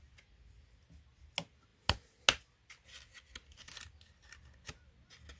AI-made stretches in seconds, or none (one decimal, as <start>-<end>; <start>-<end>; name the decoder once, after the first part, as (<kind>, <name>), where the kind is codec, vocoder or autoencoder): none